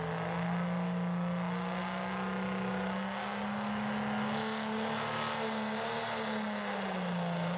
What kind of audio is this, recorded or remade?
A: recorded